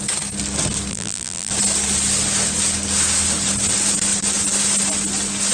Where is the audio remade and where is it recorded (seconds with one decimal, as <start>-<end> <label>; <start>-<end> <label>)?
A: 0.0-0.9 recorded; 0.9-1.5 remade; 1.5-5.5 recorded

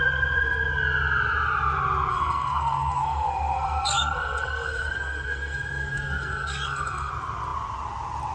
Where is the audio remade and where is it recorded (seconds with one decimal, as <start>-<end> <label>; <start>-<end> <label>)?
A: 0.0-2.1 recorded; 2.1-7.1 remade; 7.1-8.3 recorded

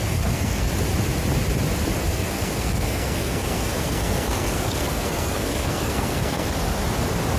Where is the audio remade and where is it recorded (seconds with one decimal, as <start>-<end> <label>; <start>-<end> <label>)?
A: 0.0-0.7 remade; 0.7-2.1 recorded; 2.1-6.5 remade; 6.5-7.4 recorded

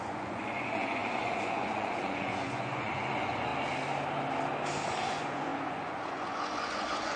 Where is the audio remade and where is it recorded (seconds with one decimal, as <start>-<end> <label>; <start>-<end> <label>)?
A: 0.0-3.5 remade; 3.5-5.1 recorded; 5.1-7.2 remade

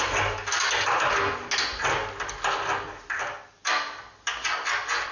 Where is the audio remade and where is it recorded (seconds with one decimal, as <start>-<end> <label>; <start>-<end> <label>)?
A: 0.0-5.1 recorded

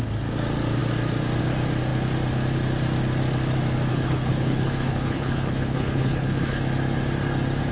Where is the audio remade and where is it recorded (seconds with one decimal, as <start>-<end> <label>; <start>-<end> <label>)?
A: 0.0-3.9 recorded; 3.9-6.6 remade; 6.6-7.7 recorded